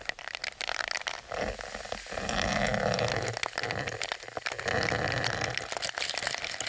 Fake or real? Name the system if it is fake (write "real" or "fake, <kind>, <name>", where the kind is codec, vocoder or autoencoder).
real